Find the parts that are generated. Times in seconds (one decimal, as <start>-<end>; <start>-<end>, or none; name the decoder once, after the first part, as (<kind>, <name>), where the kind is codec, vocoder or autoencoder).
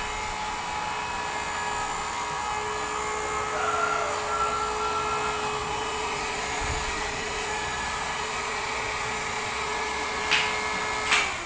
5.6-10.2 (vocoder, Vocos)